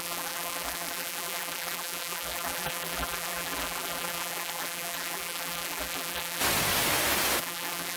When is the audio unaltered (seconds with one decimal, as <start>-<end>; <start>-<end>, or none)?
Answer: 6.4-7.4